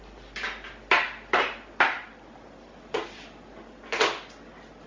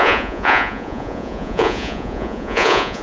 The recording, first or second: first